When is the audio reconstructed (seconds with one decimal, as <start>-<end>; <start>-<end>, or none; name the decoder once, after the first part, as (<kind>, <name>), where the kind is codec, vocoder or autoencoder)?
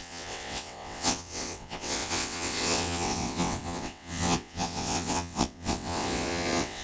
0.0-6.8 (vocoder, WaveNeXt)